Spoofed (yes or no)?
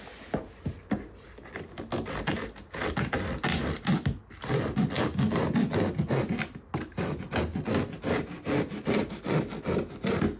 no